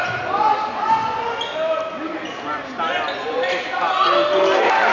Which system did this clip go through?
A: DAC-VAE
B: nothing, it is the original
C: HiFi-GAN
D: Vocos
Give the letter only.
B